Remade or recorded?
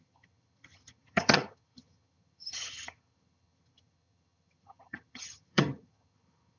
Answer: remade